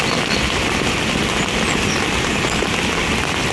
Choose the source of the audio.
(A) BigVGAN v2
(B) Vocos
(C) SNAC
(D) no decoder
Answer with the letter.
D